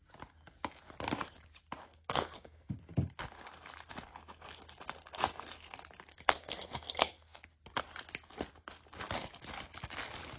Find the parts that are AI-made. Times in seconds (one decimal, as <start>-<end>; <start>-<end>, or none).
1.9-2.7; 6.1-7.4